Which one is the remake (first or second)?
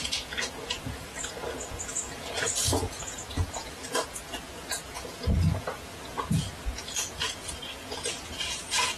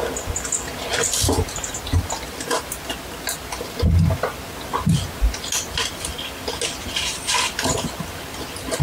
first